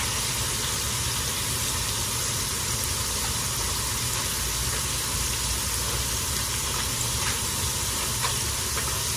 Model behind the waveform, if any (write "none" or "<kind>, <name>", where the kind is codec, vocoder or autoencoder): none